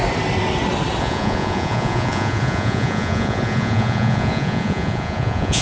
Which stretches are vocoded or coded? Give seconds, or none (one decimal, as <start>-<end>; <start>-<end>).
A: 1.0-5.6